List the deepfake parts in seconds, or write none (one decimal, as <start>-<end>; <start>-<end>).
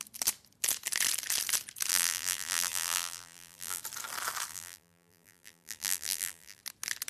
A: 1.9-3.8; 4.5-6.6